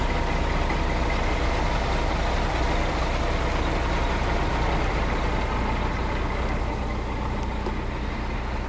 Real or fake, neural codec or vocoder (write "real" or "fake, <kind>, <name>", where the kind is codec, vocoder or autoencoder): real